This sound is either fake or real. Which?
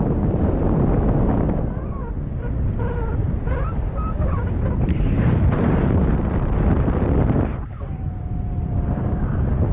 fake